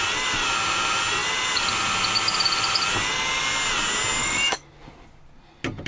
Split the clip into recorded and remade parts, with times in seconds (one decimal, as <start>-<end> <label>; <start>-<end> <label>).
0.0-4.2 recorded; 4.2-4.8 remade; 4.8-5.9 recorded